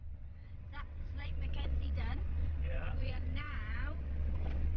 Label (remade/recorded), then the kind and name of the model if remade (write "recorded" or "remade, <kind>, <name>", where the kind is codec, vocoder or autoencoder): remade, vocoder, WaveNeXt